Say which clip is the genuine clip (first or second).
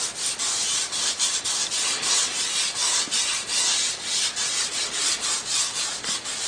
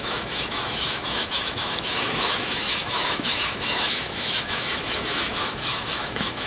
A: first